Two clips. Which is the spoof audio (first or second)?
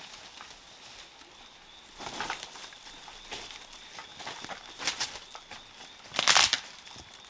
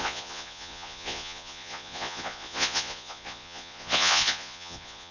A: second